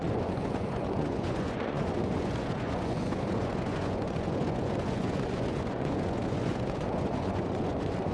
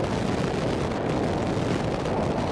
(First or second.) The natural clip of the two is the second